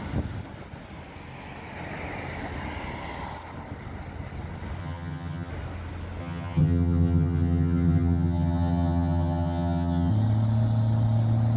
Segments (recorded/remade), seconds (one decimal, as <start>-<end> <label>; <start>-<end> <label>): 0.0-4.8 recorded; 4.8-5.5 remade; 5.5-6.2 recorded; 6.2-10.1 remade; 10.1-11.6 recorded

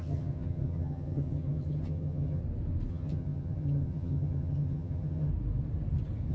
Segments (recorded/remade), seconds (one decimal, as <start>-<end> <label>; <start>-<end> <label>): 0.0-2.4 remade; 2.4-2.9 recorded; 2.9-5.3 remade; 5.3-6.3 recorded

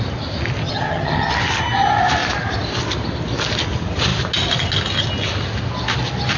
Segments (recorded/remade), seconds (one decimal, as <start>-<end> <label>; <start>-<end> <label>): 0.0-0.6 recorded; 0.6-1.3 remade; 1.3-6.4 recorded

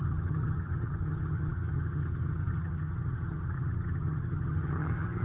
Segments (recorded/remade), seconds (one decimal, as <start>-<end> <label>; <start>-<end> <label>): 0.0-5.2 remade

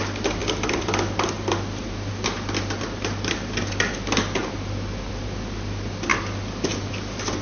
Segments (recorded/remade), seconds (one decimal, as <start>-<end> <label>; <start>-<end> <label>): 0.0-7.4 recorded